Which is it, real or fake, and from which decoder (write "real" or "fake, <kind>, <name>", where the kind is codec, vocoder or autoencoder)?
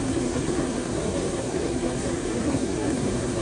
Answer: fake, codec, SNAC